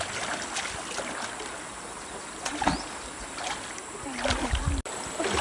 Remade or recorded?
recorded